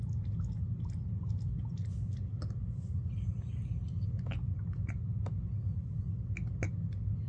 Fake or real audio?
real